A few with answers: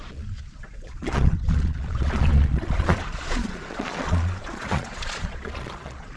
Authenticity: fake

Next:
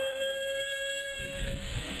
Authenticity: fake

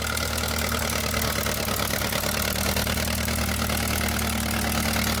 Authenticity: real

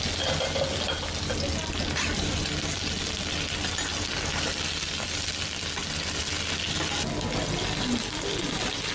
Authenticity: real